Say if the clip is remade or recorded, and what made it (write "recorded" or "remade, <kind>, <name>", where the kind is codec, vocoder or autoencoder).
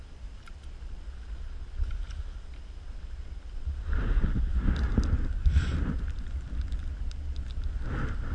recorded